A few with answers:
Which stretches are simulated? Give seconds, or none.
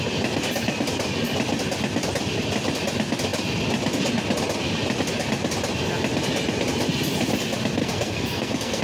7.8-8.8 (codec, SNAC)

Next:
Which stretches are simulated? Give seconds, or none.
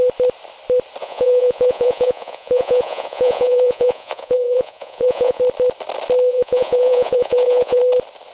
1.0-5.4 (vocoder, Vocos); 6.3-7.8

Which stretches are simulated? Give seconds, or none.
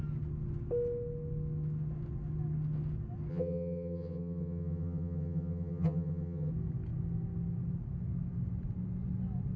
3.3-6.5 (vocoder, HiFi-GAN)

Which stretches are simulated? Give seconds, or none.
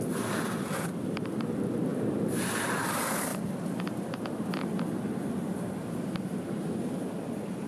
1.9-2.7 (vocoder, BigVGAN v2); 3.3-4.0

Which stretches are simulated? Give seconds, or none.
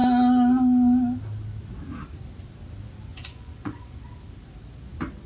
3.1-4.0 (vocoder, Vocos)